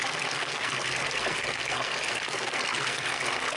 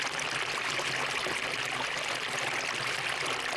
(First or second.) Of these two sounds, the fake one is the first